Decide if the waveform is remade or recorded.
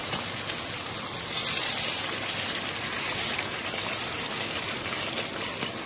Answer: recorded